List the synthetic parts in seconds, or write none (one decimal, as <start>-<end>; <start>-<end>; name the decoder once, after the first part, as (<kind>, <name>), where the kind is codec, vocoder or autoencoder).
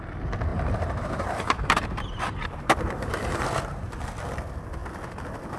0.5-3.9 (vocoder, BigVGAN v2)